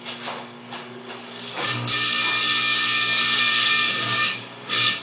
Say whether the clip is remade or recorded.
remade